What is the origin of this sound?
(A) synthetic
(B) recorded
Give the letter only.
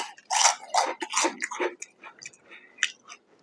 B